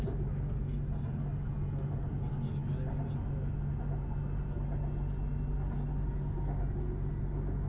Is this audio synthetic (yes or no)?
no